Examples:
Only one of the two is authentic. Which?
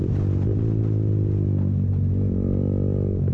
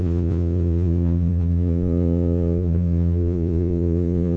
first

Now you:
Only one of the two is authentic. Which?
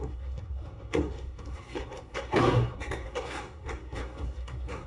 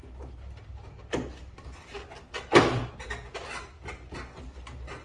second